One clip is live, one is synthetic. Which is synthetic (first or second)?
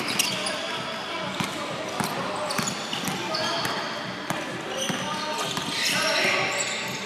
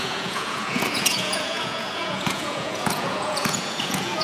second